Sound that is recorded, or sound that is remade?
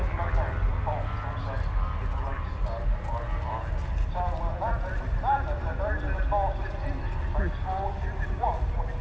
recorded